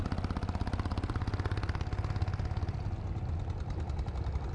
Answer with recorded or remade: recorded